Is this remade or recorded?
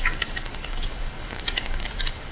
remade